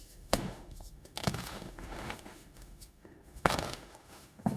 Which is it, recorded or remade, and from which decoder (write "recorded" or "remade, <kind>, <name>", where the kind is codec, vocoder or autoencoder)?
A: remade, autoencoder, DAC-VAE